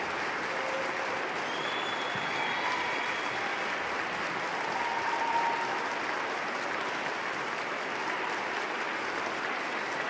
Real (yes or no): yes